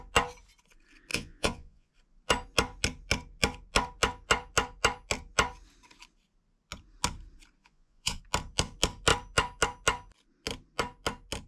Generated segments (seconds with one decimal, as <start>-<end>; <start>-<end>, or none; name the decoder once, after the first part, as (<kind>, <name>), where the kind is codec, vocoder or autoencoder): 1.1-1.9 (vocoder, Vocos); 7.6-8.2